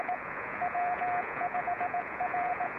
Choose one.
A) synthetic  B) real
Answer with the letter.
A